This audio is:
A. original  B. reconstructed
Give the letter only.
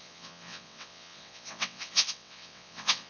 B